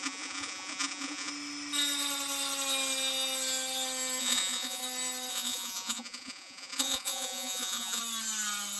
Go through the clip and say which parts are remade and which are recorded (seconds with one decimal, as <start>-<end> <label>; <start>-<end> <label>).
0.0-1.3 remade; 1.3-4.2 recorded; 4.2-4.8 remade; 4.8-5.3 recorded; 5.3-8.0 remade; 8.0-8.8 recorded